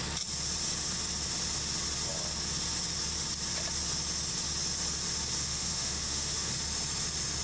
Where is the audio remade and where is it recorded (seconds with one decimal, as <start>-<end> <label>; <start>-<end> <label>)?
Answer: 0.0-5.4 recorded; 5.4-6.5 remade; 6.5-7.4 recorded